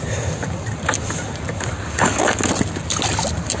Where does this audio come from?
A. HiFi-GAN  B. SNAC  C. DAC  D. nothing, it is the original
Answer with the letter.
D